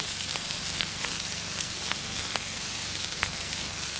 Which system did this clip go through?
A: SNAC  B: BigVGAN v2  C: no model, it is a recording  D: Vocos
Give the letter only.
A